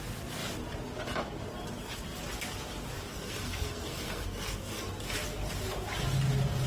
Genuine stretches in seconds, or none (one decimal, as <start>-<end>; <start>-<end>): 0.0-3.1; 4.8-6.7